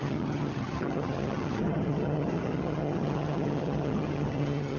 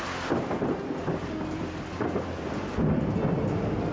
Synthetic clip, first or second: first